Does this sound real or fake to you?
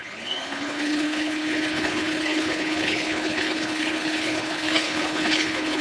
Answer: fake